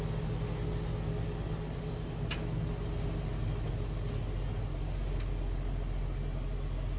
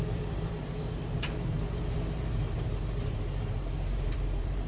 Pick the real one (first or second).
first